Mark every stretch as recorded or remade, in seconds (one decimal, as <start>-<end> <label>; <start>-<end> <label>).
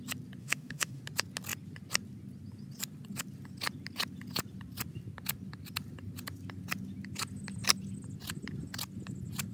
0.0-0.4 recorded; 0.4-1.0 remade; 1.0-9.5 recorded